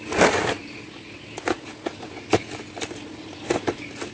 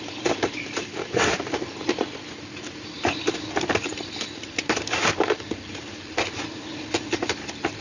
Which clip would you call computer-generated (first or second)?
second